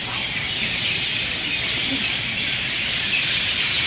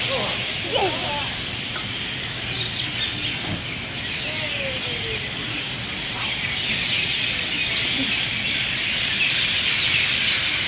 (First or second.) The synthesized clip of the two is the first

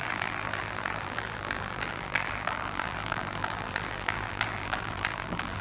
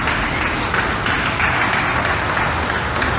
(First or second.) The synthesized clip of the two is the first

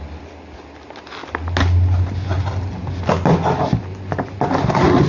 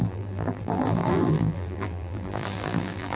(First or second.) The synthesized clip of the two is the second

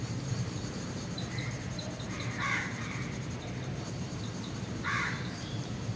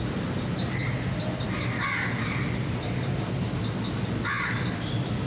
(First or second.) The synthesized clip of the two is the first